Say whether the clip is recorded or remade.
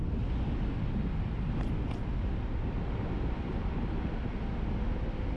recorded